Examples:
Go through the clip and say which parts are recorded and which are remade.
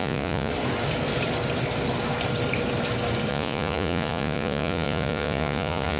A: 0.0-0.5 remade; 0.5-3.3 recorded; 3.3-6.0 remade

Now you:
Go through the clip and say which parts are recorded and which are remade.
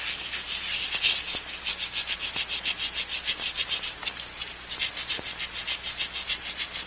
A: 0.0-1.7 recorded; 1.7-2.3 remade; 2.3-6.9 recorded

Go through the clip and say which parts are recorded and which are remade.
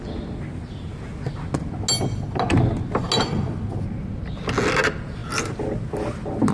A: 0.0-6.5 recorded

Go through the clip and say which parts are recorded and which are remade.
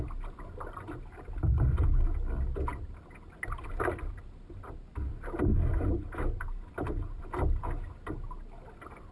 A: 0.0-9.1 recorded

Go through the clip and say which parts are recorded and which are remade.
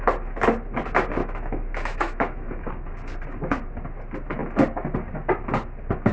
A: 0.0-1.2 recorded; 1.2-2.7 remade; 2.7-6.1 recorded